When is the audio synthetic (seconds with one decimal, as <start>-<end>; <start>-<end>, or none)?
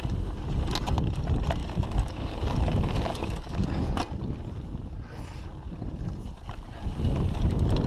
1.6-2.7; 3.1-3.8